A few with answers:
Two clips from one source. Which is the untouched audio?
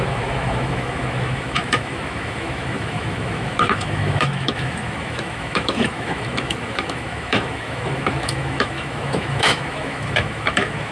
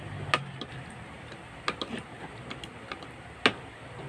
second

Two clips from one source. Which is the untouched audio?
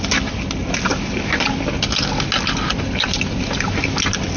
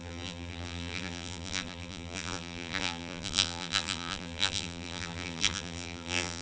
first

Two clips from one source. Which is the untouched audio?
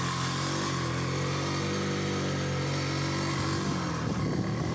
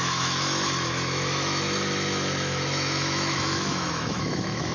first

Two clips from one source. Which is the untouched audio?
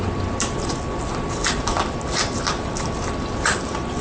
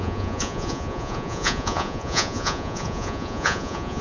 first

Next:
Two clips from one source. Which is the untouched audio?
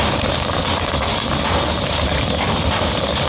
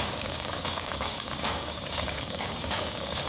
first